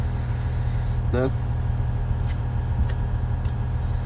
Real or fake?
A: real